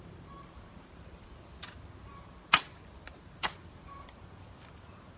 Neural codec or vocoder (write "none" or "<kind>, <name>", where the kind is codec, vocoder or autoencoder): none